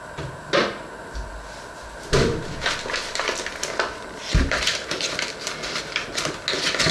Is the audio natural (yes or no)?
yes